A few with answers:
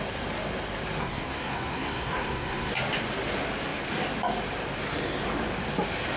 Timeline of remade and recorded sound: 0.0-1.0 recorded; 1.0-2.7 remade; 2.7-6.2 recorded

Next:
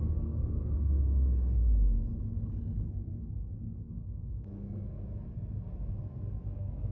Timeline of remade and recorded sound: 0.0-2.1 remade; 2.1-2.9 recorded; 2.9-5.0 remade; 5.0-5.9 recorded; 5.9-6.9 remade